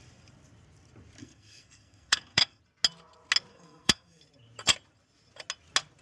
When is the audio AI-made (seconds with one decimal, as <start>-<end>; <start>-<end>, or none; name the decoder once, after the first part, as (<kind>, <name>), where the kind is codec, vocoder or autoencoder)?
1.2-2.6 (codec, SNAC); 3.5-4.2